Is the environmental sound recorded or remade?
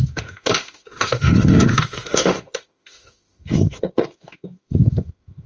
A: remade